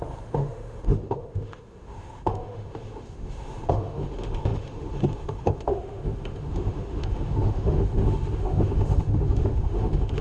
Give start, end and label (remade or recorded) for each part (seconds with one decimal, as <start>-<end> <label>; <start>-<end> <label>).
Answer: 0.0-10.2 remade